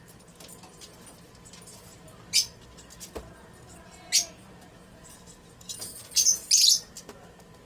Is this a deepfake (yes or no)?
no